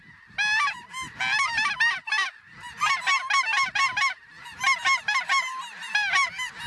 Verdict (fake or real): real